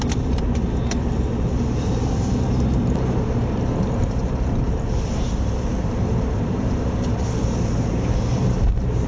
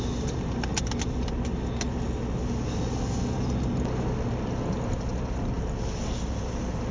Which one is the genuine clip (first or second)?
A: second